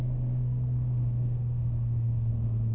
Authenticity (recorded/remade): remade